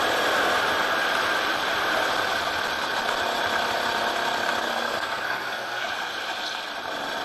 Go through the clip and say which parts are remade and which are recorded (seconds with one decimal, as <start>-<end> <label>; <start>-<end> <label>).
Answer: 0.0-4.6 recorded; 4.6-5.9 remade; 5.9-7.2 recorded